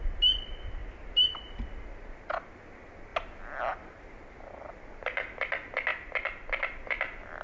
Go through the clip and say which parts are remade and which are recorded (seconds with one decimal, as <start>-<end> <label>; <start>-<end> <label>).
0.0-7.4 recorded